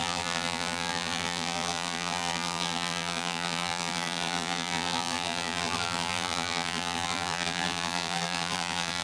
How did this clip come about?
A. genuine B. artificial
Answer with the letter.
B